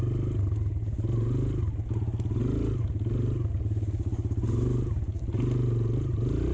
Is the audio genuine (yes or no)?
yes